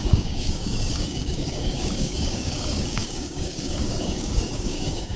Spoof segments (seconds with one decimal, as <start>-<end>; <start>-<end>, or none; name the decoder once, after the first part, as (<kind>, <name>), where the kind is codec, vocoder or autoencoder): 0.0-5.2 (codec, DAC)